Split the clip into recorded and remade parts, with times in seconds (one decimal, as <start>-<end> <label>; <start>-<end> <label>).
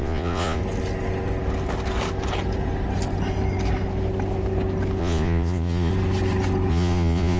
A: 0.0-0.6 remade; 0.6-5.0 recorded; 5.0-5.9 remade; 5.9-6.7 recorded; 6.7-7.4 remade